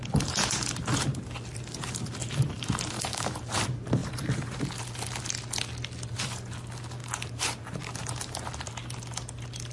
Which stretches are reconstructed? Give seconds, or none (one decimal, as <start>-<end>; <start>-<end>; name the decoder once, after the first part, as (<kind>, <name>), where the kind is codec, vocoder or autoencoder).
2.2-3.6 (vocoder, BigVGAN v2); 7.0-8.7